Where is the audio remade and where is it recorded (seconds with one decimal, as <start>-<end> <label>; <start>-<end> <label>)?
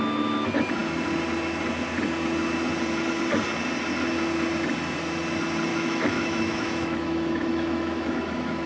0.0-5.7 recorded; 5.7-8.7 remade